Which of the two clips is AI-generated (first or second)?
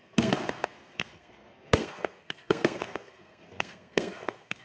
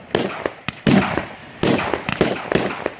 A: first